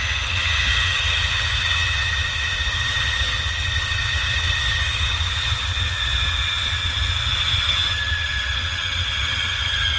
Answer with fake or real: fake